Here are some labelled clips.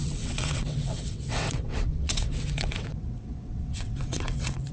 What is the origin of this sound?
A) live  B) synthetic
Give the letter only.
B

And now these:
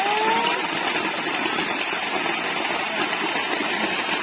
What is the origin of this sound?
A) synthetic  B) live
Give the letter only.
B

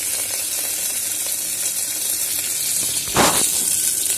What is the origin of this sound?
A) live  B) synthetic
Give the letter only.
A